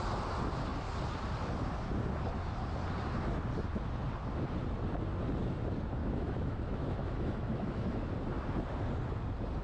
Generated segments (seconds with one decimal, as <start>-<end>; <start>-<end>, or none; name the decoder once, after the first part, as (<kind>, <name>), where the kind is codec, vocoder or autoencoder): 6.0-8.0 (autoencoder, DAC-VAE)